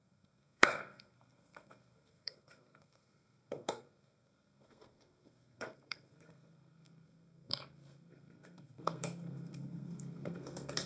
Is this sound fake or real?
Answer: fake